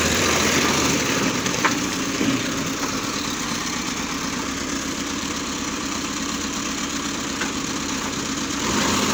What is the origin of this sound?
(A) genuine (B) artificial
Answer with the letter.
B